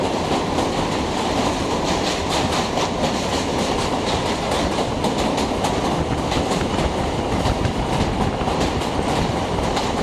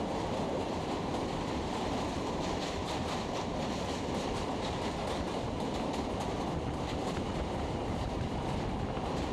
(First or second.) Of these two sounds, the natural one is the first